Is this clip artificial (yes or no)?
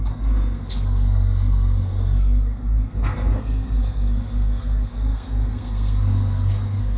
yes